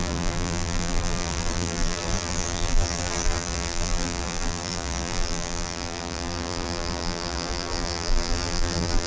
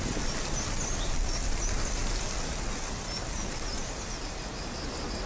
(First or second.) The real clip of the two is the second